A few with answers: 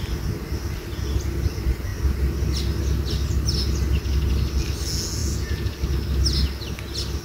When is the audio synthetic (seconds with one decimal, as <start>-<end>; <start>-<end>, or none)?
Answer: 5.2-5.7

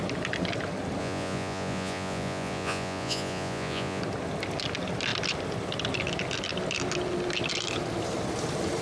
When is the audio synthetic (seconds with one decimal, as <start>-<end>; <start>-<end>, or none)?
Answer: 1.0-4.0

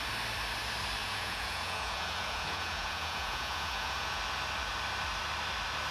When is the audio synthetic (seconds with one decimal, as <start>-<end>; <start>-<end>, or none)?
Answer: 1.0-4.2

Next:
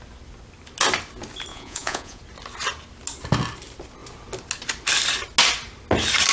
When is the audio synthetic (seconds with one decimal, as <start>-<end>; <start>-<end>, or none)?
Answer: 1.5-2.2